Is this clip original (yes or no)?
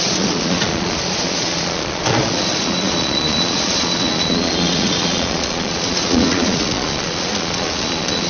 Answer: no